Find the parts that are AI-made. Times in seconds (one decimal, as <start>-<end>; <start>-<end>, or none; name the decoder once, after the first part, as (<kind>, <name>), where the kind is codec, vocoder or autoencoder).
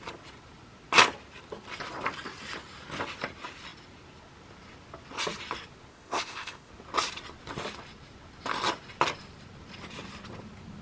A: 5.9-6.7 (codec, ZipCodec)